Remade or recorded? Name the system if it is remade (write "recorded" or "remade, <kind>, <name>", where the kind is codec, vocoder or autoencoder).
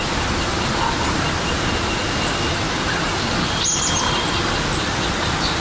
recorded